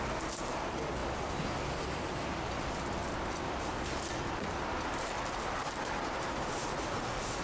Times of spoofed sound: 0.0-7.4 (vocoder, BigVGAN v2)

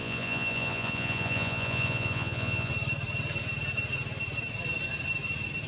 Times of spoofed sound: 0.0-2.7 (vocoder, Vocos)

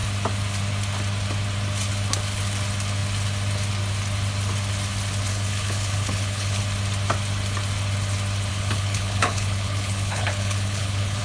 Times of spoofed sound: 5.3-6.6 (codec, HILCodec); 8.5-11.2